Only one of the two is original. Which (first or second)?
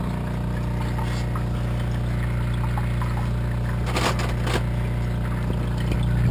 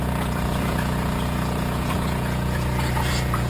first